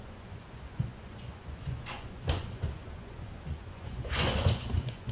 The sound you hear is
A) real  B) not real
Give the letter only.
B